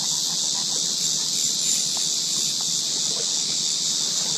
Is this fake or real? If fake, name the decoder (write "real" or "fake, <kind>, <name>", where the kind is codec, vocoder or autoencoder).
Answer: real